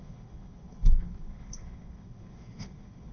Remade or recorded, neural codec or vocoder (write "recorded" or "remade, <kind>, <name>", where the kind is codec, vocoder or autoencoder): remade, codec, HILCodec